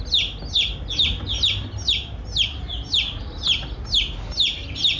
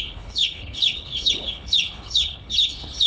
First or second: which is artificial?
second